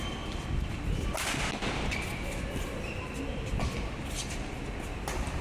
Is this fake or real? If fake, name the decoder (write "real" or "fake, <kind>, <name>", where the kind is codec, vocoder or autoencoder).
real